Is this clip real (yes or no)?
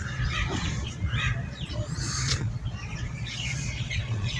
no